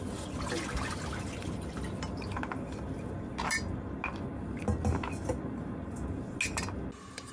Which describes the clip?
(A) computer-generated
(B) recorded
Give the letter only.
B